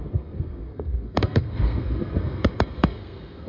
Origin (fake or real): fake